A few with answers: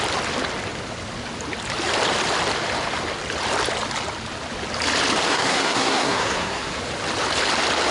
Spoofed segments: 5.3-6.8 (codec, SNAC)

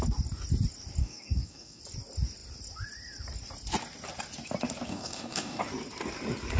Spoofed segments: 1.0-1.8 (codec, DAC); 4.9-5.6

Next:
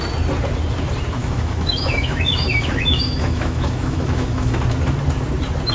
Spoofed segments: 1.2-4.6 (autoencoder, DAC-VAE)

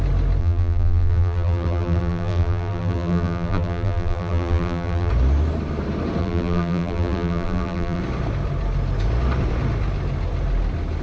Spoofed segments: 0.4-5.1 (vocoder, BigVGAN v2); 6.2-8.0